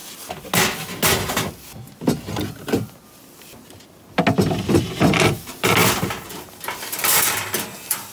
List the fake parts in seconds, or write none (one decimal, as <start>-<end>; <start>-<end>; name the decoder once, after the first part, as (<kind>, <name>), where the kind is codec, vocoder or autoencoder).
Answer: 4.7-5.8 (vocoder, BigVGAN v2); 6.3-8.1